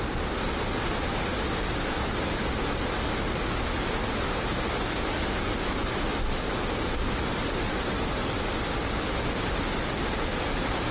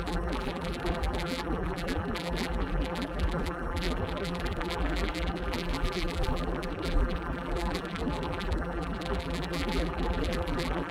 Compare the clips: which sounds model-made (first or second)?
second